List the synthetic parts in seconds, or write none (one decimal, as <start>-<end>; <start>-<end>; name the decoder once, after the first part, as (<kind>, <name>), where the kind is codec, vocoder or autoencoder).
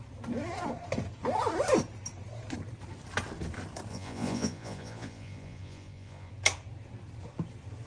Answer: 3.9-6.3 (vocoder, Vocos)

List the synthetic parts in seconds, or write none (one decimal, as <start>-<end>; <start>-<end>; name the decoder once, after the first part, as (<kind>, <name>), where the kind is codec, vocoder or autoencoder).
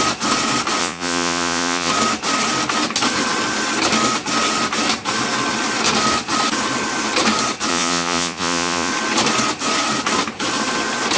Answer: 0.8-1.9 (vocoder, Vocos); 7.7-8.9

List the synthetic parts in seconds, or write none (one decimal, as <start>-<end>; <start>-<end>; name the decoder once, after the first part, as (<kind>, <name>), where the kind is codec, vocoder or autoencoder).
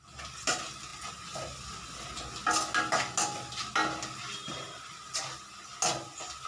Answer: none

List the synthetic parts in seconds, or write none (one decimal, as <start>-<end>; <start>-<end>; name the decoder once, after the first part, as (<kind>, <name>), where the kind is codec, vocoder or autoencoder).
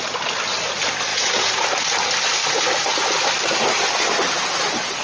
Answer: 1.1-1.6 (vocoder, Vocos)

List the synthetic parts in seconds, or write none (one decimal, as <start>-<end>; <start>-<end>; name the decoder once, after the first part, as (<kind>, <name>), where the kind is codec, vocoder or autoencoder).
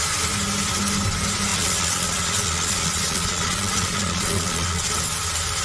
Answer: 1.5-4.9 (vocoder, Vocos)